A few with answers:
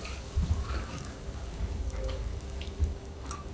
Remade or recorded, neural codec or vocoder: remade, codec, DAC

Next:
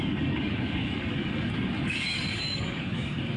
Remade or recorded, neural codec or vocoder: remade, codec, DAC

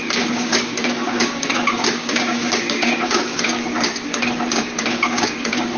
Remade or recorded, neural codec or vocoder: remade, codec, DAC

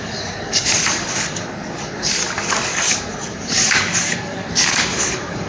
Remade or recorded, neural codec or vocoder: remade, codec, DAC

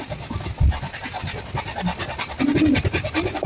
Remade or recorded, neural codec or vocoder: recorded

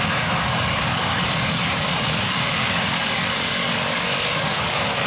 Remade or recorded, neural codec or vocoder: remade, codec, DAC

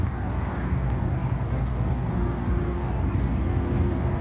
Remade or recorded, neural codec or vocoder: remade, codec, DAC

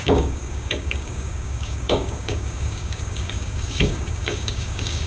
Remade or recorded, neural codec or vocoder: remade, codec, DAC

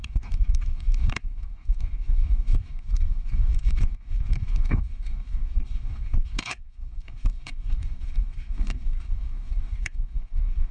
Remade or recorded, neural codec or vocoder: remade, codec, DAC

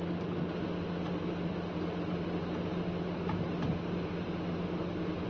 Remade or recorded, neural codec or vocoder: recorded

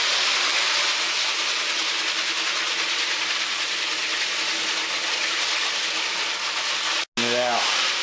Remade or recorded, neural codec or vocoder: recorded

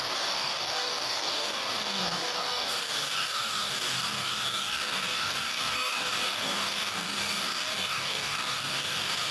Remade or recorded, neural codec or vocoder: remade, codec, DAC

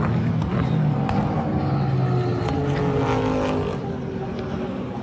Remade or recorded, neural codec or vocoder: recorded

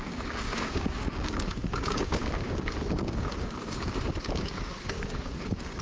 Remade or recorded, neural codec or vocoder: remade, codec, DAC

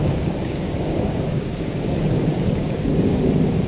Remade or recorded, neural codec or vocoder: remade, codec, DAC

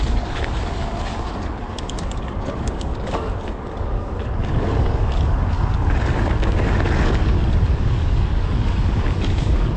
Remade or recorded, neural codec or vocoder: remade, codec, DAC